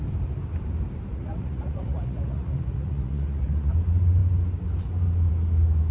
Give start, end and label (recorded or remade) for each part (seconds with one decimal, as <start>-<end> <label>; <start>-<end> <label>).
0.0-1.1 recorded; 1.1-3.7 remade; 3.7-5.9 recorded